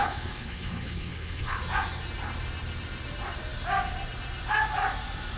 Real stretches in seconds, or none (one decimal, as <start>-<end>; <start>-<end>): 1.6-5.4